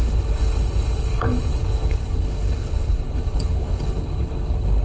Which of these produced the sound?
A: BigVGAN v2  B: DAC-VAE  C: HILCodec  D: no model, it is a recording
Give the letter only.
C